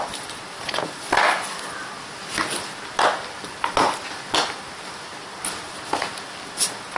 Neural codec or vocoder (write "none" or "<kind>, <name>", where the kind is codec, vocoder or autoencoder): none